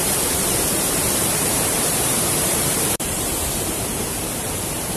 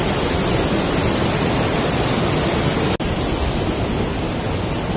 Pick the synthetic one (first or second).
first